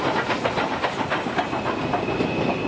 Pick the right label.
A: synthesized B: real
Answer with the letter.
B